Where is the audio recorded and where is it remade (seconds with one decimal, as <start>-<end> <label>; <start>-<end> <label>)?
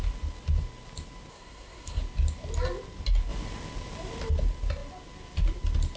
0.0-1.3 recorded; 1.3-2.0 remade; 2.0-6.0 recorded